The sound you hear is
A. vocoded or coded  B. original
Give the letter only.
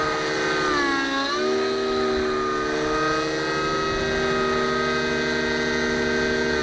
B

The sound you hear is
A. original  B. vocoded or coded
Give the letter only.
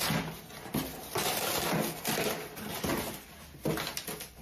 A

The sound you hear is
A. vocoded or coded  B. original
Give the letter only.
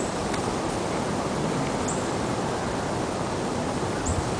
B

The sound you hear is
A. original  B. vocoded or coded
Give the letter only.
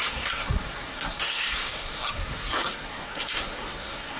B